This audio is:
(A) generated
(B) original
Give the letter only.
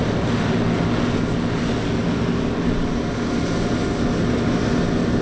B